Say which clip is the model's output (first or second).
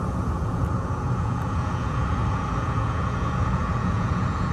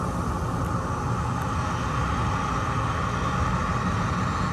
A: first